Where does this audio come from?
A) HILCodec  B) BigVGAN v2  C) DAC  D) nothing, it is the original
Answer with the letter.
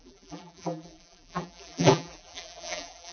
B